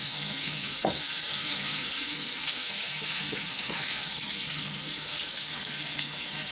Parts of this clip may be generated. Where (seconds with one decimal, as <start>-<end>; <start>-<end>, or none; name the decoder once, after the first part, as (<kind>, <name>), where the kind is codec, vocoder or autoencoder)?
0.0-6.5 (codec, SNAC)